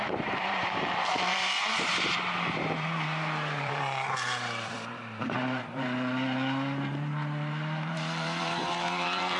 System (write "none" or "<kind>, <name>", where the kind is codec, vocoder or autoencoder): vocoder, BigVGAN v2